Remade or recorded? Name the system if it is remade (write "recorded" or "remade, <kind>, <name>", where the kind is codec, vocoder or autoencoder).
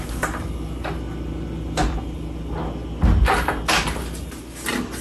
recorded